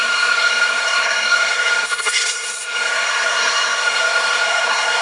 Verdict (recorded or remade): remade